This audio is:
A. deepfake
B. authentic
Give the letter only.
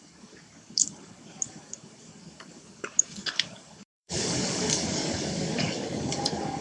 A